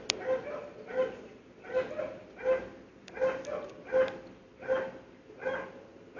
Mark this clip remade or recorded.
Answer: recorded